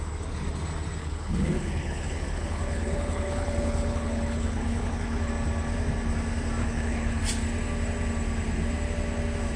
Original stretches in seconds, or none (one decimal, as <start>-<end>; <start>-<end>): 0.0-1.0; 5.3-6.6; 7.2-9.6